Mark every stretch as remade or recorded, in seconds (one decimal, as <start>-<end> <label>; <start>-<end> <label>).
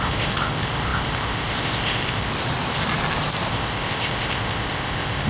0.0-2.3 remade; 2.3-3.5 recorded; 3.5-5.3 remade